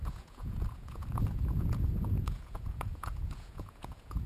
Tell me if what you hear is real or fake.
fake